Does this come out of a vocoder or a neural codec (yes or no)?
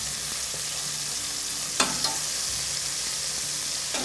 no